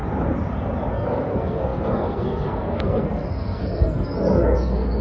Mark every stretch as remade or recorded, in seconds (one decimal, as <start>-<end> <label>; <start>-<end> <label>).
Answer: 0.0-0.9 recorded; 0.9-5.0 remade